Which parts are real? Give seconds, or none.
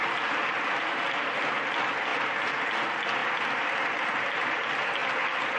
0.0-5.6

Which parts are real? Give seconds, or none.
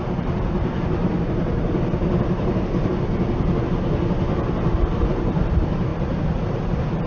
2.9-5.1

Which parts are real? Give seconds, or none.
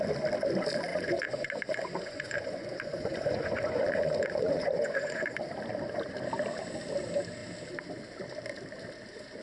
0.0-0.9; 5.3-9.4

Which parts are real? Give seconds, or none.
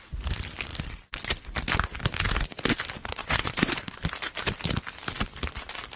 0.0-3.2; 3.7-6.0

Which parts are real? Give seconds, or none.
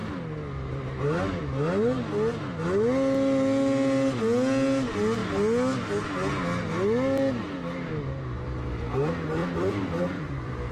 0.0-9.4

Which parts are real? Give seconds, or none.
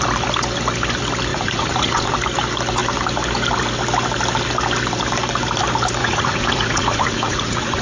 0.0-1.3; 2.1-6.0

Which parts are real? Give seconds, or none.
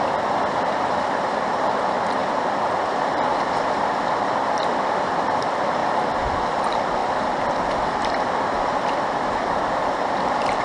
2.2-2.9; 5.8-6.4; 7.0-7.8